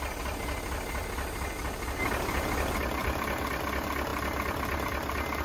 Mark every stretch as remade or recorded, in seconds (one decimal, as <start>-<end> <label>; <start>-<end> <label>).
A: 0.0-3.0 recorded; 3.0-3.6 remade; 3.6-5.4 recorded